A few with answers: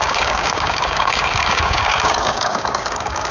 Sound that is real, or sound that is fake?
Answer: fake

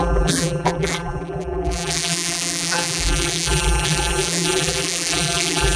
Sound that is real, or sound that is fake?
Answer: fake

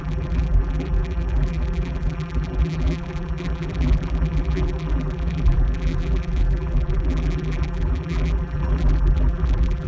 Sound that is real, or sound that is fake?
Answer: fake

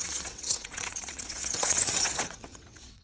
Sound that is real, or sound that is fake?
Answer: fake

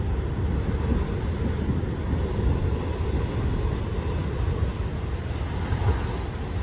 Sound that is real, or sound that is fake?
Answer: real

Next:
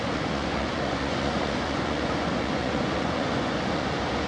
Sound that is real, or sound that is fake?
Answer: fake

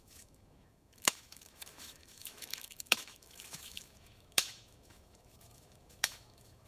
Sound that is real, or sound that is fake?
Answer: fake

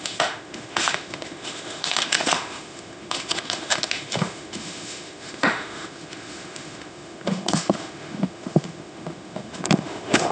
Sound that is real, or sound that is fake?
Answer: fake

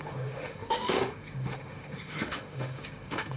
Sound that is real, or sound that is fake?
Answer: fake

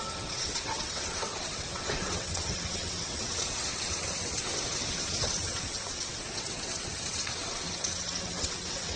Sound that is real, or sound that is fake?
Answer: fake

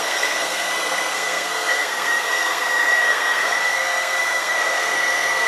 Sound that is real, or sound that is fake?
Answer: fake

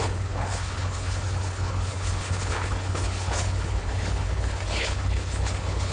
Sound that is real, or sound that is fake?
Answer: fake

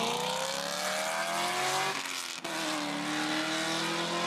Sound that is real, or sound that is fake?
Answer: real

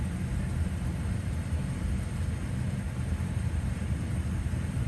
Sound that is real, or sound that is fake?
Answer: fake